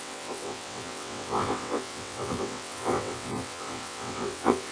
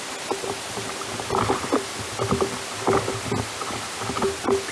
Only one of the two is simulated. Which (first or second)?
first